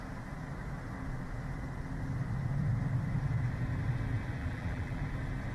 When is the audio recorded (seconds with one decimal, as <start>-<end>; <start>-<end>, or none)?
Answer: 0.0-4.4; 5.0-5.5